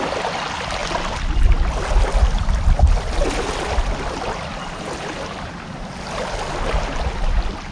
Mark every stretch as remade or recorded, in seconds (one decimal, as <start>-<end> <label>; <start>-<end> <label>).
0.0-7.7 recorded